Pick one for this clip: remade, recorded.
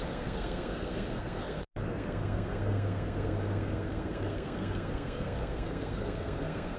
remade